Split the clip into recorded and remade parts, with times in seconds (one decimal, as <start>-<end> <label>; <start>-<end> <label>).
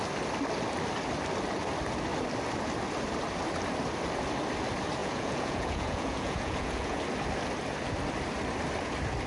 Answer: 0.0-5.0 recorded; 5.0-7.0 remade; 7.0-9.3 recorded